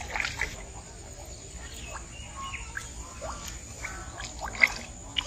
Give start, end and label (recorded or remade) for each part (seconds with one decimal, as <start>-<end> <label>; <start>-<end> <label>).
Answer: 0.0-5.3 recorded